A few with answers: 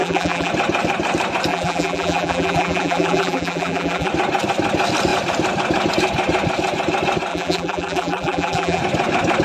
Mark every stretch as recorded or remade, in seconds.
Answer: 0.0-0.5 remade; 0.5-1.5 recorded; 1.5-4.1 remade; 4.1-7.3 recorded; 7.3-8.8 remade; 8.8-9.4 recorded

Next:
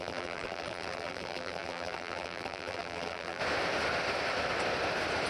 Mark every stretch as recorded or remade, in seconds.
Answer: 0.0-3.4 remade; 3.4-5.3 recorded